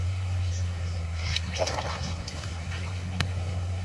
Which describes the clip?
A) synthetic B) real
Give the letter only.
A